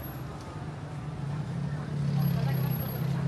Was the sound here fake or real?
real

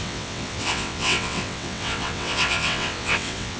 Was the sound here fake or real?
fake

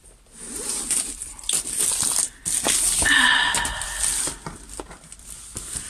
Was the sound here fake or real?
real